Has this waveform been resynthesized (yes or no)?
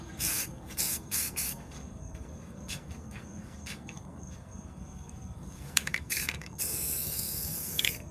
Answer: yes